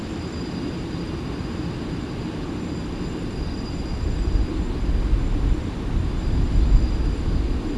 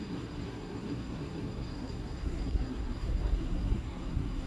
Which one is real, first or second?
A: first